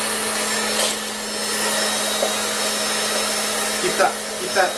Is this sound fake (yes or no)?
no